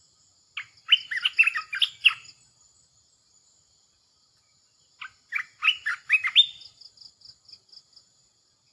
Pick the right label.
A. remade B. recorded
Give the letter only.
B